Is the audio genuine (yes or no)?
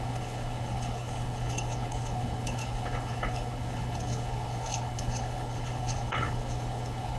no